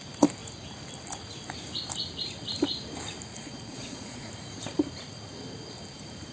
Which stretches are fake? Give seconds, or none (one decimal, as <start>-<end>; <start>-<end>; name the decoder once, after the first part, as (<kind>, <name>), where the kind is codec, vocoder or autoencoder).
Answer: 3.3-4.3 (vocoder, Vocos)